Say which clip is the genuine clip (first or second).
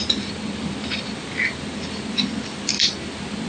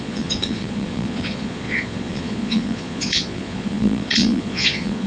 first